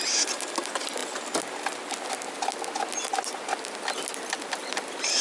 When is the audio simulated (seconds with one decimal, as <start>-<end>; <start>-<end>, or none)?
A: none